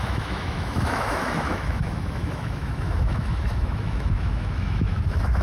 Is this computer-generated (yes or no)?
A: yes